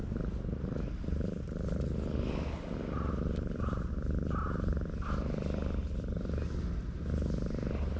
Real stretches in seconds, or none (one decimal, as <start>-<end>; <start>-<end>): 0.0-8.0